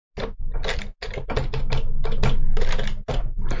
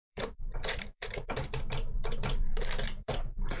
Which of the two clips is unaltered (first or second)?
first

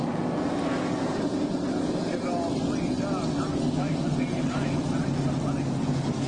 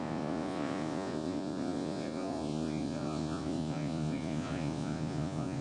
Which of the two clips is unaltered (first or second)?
first